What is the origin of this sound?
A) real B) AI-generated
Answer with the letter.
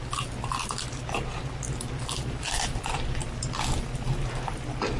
B